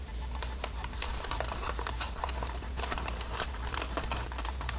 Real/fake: fake